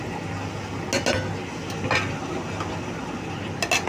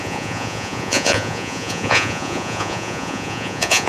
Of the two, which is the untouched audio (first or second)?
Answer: first